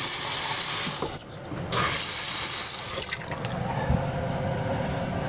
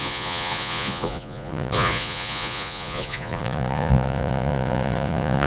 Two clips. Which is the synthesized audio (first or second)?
second